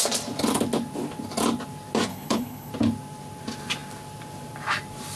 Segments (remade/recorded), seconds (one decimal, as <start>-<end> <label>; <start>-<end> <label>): 0.0-2.1 recorded; 2.1-2.7 remade; 2.7-5.2 recorded